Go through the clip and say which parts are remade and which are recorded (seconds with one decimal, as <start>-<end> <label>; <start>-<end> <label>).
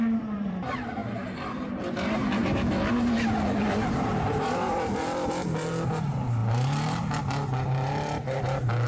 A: 0.0-1.0 remade; 1.0-1.7 recorded; 1.7-8.9 remade